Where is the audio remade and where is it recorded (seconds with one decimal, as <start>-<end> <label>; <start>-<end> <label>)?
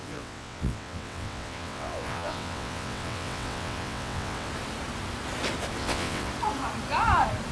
0.0-4.5 remade; 4.5-5.8 recorded; 5.8-6.3 remade; 6.3-7.5 recorded